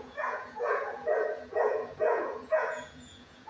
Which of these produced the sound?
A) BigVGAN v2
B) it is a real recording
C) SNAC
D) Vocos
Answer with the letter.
D